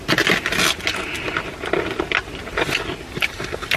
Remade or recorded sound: recorded